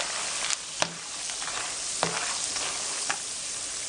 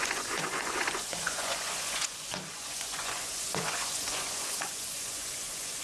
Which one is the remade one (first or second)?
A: second